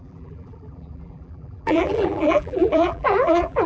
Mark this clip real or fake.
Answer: fake